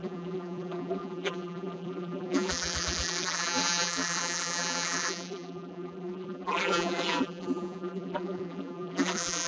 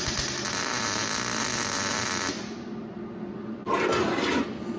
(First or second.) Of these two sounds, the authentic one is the second